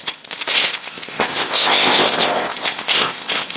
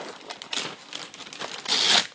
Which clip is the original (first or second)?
second